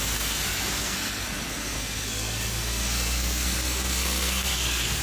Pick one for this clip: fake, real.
fake